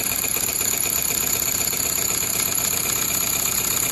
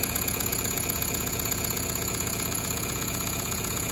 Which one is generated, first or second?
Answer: second